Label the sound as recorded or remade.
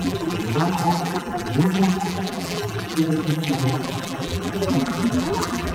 remade